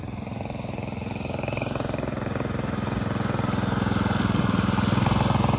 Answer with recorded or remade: recorded